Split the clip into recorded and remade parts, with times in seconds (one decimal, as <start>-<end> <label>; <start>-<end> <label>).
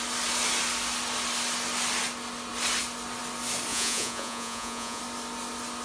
0.0-3.7 recorded; 3.7-5.0 remade; 5.0-5.8 recorded